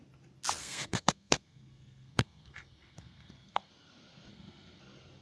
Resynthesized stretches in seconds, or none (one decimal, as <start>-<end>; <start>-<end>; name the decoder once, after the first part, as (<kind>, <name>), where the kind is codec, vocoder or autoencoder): 0.6-3.7 (codec, SNAC); 4.3-4.8